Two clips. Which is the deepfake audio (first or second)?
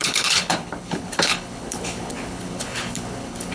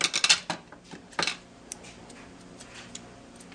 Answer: first